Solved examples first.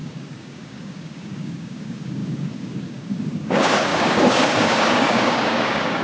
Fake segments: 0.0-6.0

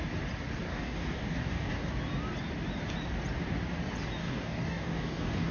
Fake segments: 0.7-1.9; 4.2-5.5

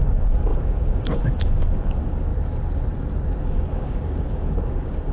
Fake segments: 0.0-2.3; 3.4-5.1